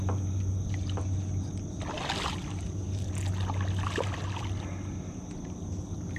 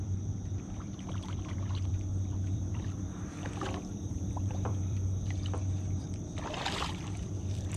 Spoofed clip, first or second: second